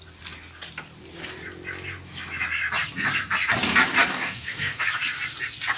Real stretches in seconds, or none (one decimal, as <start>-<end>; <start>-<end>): 0.0-4.1; 4.8-5.8